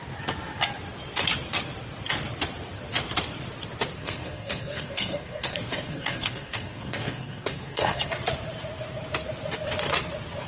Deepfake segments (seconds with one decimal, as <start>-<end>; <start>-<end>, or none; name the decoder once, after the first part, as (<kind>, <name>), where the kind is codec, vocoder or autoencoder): 4.0-8.1 (codec, SNAC)